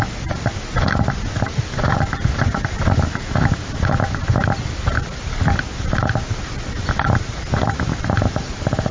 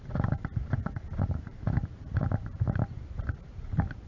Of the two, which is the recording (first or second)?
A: first